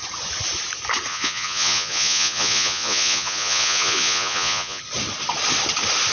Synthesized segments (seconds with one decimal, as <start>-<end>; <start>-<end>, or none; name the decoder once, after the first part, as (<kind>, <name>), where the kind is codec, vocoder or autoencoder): 1.1-4.8 (vocoder, Vocos)